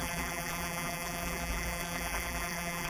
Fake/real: fake